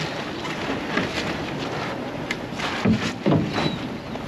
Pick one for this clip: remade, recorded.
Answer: recorded